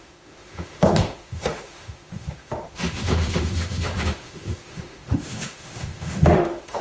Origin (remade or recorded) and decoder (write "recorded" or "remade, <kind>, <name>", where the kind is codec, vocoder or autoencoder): remade, autoencoder, DAC-VAE